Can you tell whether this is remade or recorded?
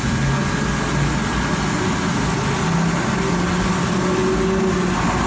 recorded